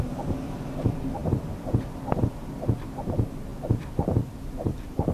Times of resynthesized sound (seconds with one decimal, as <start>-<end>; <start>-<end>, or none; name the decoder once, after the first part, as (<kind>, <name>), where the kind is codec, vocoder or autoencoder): 1.2-2.2 (vocoder, BigVGAN v2); 3.5-5.1